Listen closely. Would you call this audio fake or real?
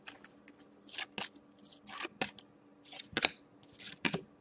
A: real